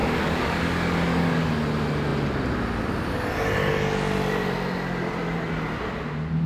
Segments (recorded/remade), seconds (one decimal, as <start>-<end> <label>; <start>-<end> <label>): 0.0-1.5 remade; 1.5-6.5 recorded